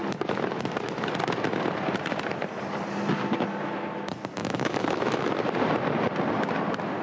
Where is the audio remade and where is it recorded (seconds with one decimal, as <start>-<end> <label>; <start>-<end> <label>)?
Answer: 0.0-4.4 recorded; 4.4-5.2 remade; 5.2-7.0 recorded